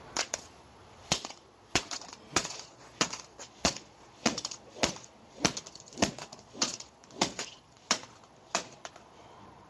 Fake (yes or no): yes